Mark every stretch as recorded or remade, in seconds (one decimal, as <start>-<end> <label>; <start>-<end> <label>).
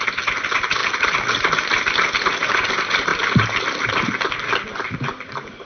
0.0-5.7 recorded